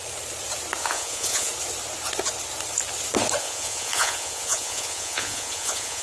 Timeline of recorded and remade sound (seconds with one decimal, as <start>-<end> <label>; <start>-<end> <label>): 0.0-0.8 recorded; 0.8-1.5 remade; 1.5-3.4 recorded; 3.4-6.0 remade